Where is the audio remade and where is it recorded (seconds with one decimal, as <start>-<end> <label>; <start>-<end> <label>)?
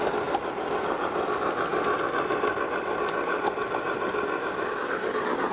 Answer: 0.0-5.5 recorded